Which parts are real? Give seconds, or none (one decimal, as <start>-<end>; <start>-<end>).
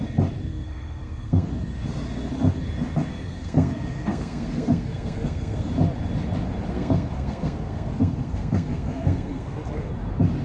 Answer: 0.0-0.5; 1.5-3.1; 5.7-6.7; 9.9-10.4